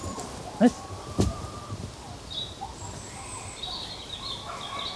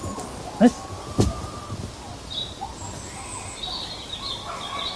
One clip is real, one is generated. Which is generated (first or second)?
first